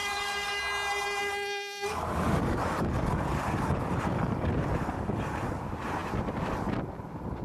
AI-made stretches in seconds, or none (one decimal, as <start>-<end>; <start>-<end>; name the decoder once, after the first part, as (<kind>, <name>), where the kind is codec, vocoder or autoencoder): 0.0-0.6 (codec, DAC); 1.2-5.6